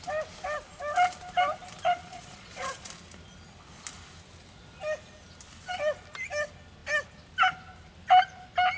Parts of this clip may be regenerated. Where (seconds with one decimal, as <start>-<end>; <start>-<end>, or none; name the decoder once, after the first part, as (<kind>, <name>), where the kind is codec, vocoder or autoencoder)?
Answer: 2.0-2.9 (vocoder, Vocos)